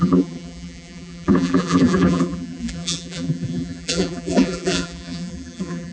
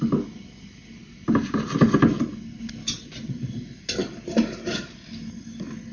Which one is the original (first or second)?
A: second